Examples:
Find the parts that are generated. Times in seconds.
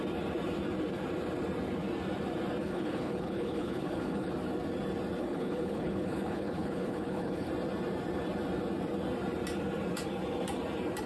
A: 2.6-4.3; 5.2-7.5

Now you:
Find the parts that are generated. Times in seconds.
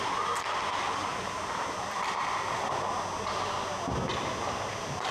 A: 1.1-2.9